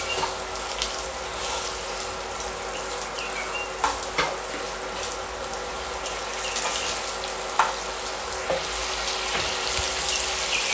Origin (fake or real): real